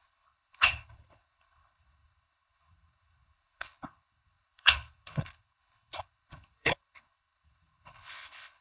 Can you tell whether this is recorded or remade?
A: remade